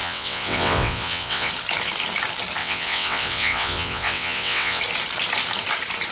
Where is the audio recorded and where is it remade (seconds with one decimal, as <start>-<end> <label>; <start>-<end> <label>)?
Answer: 0.0-1.5 remade; 1.5-2.6 recorded; 2.6-4.8 remade; 4.8-6.1 recorded